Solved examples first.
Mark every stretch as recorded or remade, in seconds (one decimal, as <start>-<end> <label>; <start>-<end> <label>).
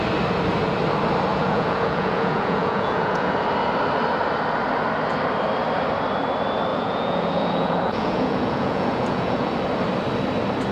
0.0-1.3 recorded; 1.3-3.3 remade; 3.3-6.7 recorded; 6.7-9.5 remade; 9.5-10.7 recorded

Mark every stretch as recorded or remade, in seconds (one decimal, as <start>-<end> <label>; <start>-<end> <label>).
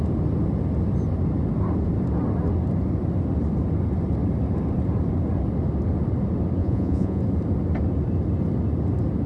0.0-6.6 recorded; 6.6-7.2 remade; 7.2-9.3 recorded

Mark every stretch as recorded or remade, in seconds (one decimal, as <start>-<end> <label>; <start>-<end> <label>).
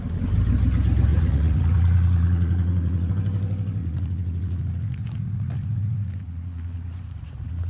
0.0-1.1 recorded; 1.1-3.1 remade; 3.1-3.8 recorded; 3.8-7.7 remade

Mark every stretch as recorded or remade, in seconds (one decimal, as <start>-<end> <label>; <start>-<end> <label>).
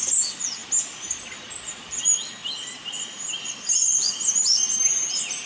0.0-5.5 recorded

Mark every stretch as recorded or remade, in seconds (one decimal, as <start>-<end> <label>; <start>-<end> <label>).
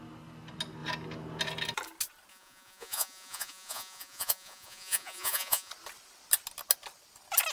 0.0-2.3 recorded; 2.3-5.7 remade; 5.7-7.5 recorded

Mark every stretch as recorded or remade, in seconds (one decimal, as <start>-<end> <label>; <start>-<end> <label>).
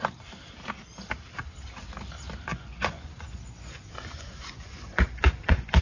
0.0-2.5 recorded; 2.5-5.8 remade